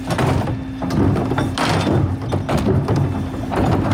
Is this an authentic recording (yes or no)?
yes